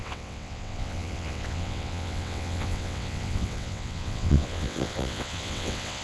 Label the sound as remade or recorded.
remade